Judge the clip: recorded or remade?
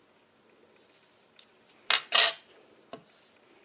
recorded